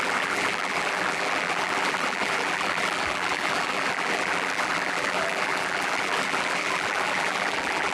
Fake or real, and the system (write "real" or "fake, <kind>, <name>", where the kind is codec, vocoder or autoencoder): fake, vocoder, BigVGAN v2